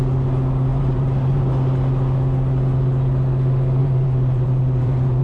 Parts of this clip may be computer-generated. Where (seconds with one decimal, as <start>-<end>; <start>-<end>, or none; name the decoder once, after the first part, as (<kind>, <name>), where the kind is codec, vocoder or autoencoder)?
0.7-1.4 (vocoder, BigVGAN v2); 3.8-5.2